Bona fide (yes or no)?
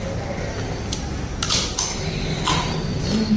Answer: yes